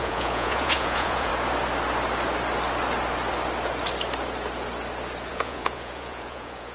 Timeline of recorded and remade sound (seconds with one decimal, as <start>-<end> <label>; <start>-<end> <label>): 0.0-1.3 remade; 1.3-5.3 recorded; 5.3-6.7 remade